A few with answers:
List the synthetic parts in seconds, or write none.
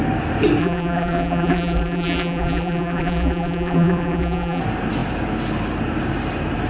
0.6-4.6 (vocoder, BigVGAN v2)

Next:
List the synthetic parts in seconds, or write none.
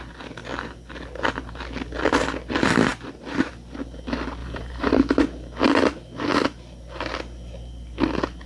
4.4-5.0 (vocoder, BigVGAN v2)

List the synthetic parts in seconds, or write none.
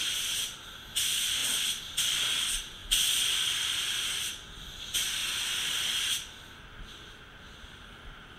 none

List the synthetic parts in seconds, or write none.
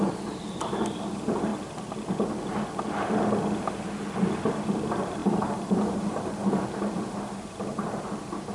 0.0-1.5 (vocoder, BigVGAN v2); 4.2-8.5